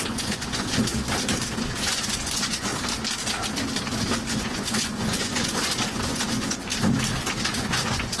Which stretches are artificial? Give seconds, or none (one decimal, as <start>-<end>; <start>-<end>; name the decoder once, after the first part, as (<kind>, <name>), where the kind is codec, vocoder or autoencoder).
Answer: 0.0-0.9 (vocoder, Vocos); 1.6-2.7; 4.3-6.7; 7.4-8.2